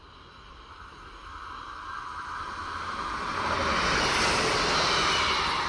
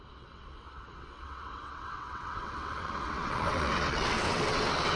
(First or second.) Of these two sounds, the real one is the first